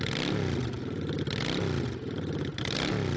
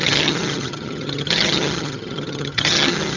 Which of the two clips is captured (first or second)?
first